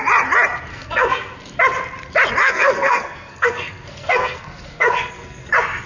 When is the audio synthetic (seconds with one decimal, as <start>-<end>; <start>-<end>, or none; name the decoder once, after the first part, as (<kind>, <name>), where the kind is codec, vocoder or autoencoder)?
0.7-1.4 (codec, SNAC); 2.4-5.5